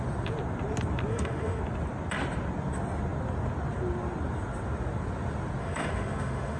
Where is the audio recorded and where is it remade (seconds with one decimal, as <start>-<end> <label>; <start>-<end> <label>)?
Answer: 0.0-1.1 recorded; 1.1-1.6 remade; 1.6-5.6 recorded; 5.6-6.6 remade